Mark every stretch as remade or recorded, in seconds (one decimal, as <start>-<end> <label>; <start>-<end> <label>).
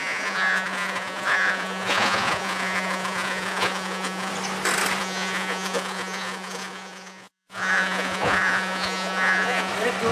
0.0-4.3 remade; 4.3-5.0 recorded; 5.0-9.7 remade; 9.7-10.1 recorded